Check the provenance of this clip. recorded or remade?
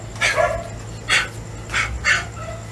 recorded